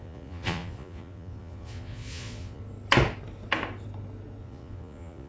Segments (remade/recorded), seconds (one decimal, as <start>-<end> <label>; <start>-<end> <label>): 0.0-2.6 remade; 2.6-4.4 recorded; 4.4-5.3 remade